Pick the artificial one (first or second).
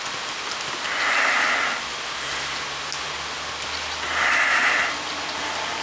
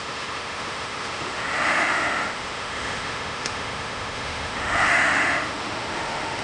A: second